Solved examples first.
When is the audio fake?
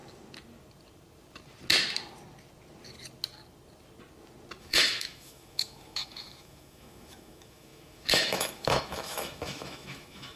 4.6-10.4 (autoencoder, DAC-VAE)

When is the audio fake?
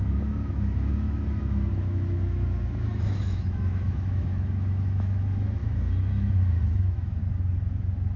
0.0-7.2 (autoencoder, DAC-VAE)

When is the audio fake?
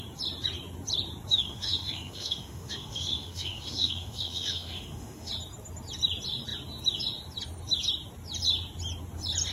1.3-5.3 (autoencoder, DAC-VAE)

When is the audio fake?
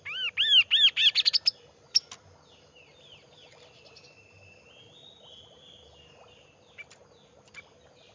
none